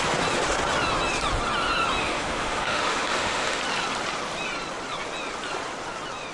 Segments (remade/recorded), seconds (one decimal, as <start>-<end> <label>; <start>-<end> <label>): 0.0-2.0 recorded; 2.0-3.6 remade; 3.6-6.3 recorded